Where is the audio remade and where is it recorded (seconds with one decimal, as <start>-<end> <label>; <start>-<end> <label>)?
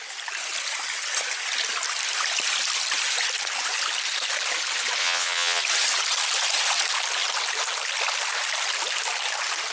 0.0-5.0 recorded; 5.0-5.6 remade; 5.6-9.7 recorded